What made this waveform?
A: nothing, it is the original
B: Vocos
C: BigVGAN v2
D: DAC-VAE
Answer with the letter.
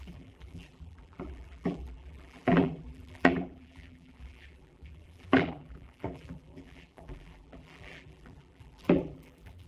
C